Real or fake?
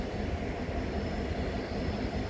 real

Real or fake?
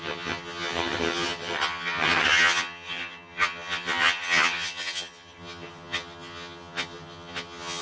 fake